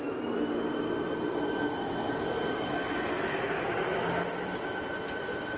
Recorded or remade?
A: recorded